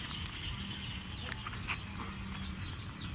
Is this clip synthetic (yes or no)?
no